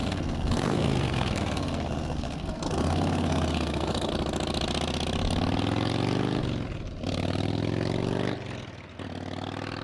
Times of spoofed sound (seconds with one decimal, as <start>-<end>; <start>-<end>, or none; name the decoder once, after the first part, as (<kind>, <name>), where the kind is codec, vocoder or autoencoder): 0.0-4.1 (codec, SNAC)